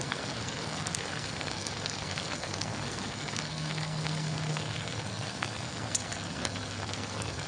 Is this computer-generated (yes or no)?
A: yes